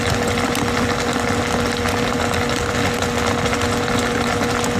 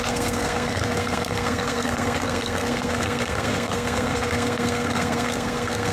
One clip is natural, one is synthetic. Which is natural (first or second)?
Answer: first